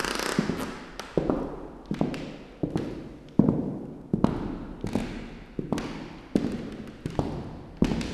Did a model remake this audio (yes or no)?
no